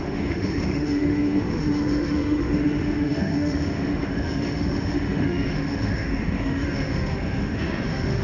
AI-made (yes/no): yes